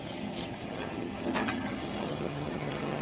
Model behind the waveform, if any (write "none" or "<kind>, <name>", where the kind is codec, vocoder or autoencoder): vocoder, HiFi-GAN